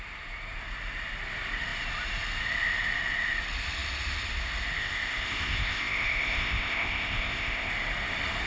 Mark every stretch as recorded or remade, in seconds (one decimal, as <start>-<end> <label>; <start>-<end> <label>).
0.0-4.8 recorded; 4.8-7.7 remade; 7.7-8.5 recorded